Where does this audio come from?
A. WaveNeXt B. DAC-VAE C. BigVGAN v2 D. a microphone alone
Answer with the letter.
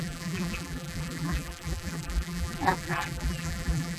C